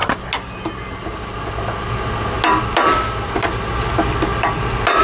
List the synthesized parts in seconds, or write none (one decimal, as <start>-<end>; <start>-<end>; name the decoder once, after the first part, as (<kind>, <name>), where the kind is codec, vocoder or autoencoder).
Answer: none